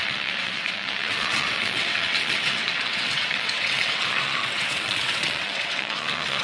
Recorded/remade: remade